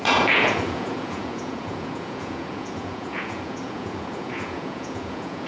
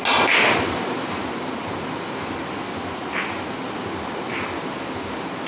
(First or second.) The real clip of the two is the second